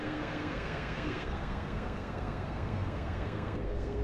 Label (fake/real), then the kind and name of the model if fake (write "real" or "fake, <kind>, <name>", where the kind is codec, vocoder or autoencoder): fake, codec, SNAC